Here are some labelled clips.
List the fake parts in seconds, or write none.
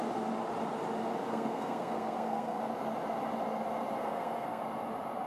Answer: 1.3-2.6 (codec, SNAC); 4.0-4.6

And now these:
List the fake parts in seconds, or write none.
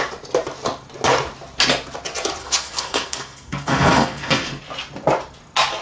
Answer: 2.4-4.6 (codec, SNAC)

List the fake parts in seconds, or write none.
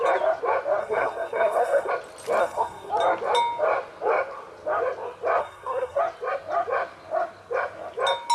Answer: 0.8-1.9 (codec, SNAC); 2.4-2.9; 5.4-6.0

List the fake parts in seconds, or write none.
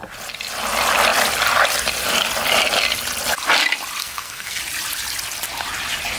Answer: 4.0-4.6 (codec, SNAC)